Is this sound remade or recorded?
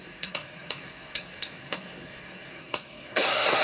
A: remade